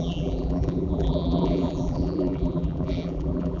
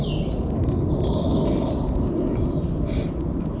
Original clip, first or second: second